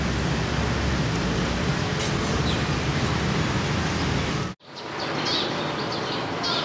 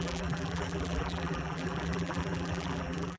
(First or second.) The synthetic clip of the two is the second